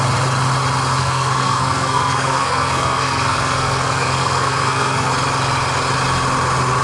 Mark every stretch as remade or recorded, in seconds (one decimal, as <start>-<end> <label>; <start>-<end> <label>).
0.0-1.0 recorded; 1.0-5.1 remade; 5.1-6.8 recorded